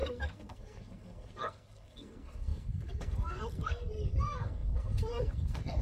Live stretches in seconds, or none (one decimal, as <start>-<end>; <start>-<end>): none